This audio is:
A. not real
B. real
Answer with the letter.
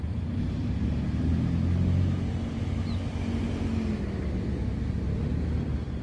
B